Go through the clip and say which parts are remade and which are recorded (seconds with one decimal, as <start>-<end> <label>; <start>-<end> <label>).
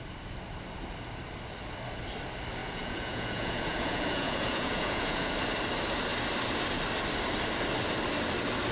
0.0-2.6 recorded; 2.6-5.3 remade; 5.3-8.7 recorded